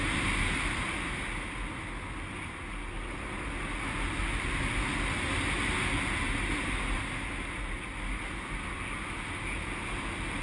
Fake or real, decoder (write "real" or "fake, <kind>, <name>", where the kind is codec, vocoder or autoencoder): real